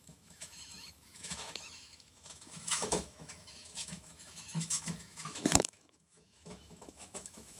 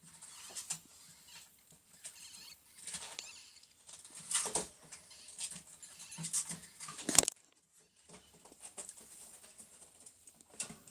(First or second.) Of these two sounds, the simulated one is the first